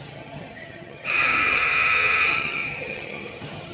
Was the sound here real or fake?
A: fake